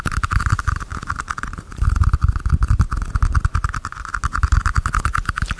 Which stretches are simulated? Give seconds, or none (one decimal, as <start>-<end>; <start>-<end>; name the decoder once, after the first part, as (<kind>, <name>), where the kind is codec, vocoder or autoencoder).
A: none